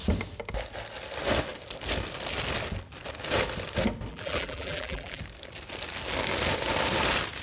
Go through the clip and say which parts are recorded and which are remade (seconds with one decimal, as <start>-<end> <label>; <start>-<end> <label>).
0.0-4.1 recorded; 4.1-5.2 remade; 5.2-7.4 recorded